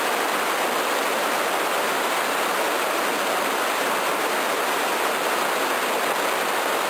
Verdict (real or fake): real